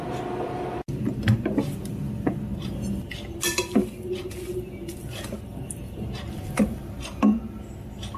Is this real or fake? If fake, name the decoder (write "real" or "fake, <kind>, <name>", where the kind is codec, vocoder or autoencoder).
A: real